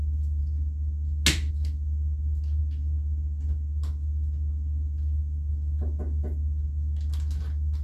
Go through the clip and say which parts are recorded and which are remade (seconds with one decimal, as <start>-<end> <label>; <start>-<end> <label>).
0.0-7.8 recorded